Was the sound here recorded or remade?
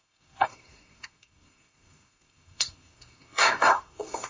remade